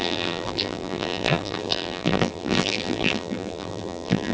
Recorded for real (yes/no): no